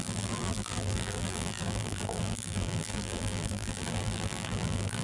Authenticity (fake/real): fake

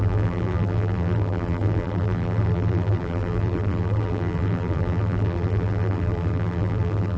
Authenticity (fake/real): fake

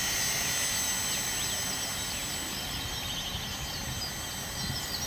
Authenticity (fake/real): real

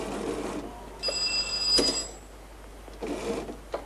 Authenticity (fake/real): real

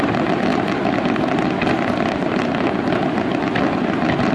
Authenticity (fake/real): real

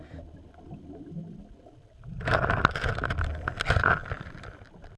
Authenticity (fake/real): fake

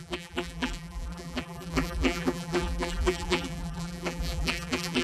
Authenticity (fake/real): fake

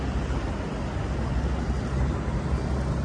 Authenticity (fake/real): real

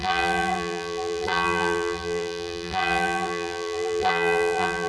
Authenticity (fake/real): fake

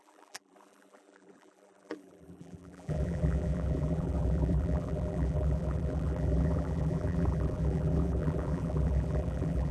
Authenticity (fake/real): fake